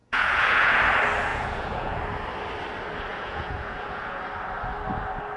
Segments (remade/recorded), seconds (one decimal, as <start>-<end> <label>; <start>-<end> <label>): 0.0-0.8 remade; 0.8-1.3 recorded; 1.3-2.0 remade; 2.0-3.1 recorded; 3.1-4.2 remade; 4.2-5.4 recorded